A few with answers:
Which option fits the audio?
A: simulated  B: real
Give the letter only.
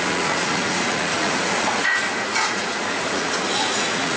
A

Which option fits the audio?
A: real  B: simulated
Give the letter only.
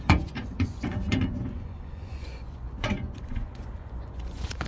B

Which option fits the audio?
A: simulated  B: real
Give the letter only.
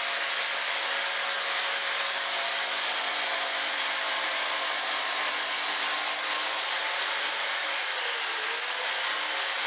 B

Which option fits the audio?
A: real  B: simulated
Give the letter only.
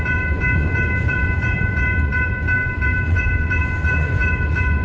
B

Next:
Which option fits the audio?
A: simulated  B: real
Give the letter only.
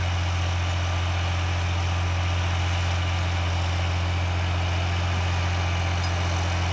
B